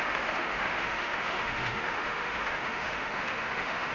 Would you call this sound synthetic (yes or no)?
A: yes